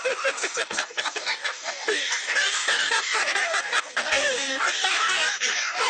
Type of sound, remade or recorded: remade